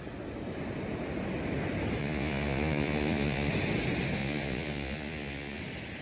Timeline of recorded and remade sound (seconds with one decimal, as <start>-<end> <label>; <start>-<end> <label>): 0.0-2.0 recorded; 2.0-3.5 remade; 3.5-4.2 recorded; 4.2-5.6 remade; 5.6-6.0 recorded